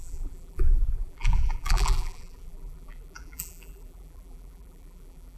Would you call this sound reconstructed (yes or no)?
yes